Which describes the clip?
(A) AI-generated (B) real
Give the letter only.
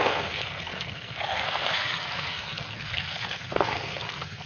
A